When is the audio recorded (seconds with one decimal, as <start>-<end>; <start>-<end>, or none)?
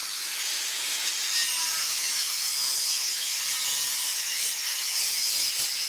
1.0-1.8; 3.4-4.0; 5.5-5.9